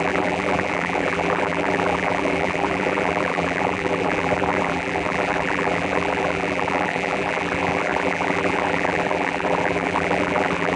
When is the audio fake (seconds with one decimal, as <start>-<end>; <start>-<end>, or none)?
0.0-10.8